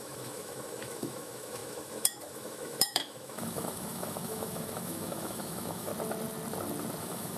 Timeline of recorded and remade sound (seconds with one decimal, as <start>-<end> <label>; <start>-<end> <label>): 0.0-5.9 remade; 5.9-7.0 recorded; 7.0-7.4 remade